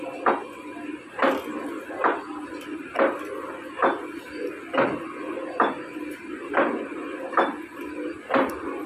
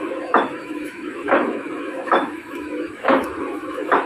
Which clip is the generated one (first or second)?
second